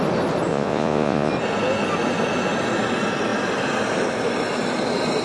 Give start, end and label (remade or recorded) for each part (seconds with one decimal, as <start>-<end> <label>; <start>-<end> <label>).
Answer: 0.0-0.5 recorded; 0.5-1.3 remade; 1.3-5.2 recorded